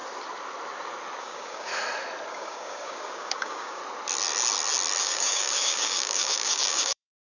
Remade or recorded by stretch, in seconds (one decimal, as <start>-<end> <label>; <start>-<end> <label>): 0.0-1.2 recorded; 1.2-1.7 remade; 1.7-2.3 recorded; 2.3-3.8 remade; 3.8-5.0 recorded; 5.0-7.4 remade